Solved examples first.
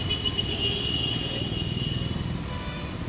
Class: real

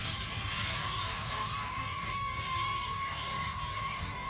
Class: fake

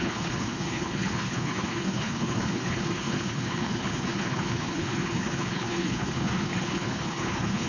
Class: fake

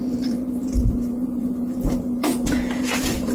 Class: fake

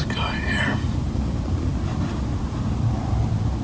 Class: real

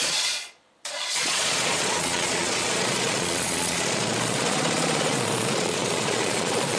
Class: fake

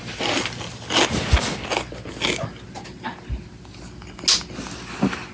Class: real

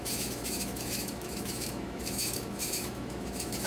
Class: fake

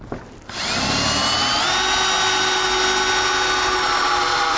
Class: real